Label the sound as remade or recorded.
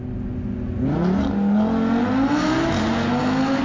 recorded